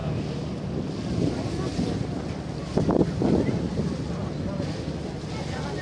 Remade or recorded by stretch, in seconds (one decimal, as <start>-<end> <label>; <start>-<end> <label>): 0.0-5.8 recorded